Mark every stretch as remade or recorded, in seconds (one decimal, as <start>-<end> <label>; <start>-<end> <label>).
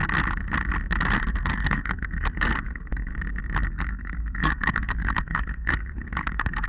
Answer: 0.0-1.2 recorded; 1.2-3.1 remade; 3.1-3.7 recorded; 3.7-6.7 remade